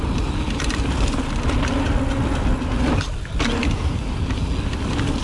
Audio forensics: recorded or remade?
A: recorded